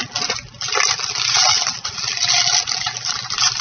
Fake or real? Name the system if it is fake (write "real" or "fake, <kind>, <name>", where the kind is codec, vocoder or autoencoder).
real